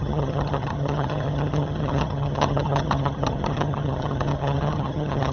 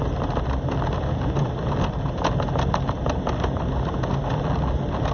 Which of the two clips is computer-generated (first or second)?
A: first